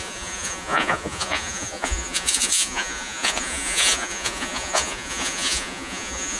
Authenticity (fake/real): fake